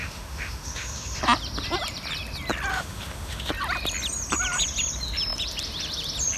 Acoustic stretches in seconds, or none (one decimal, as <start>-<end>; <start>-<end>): 1.2-2.7; 3.5-6.4